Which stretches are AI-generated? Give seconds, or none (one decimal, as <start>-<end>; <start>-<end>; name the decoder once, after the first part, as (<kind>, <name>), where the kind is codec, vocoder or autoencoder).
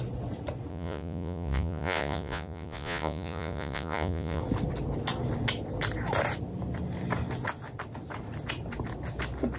0.7-4.4 (vocoder, Vocos)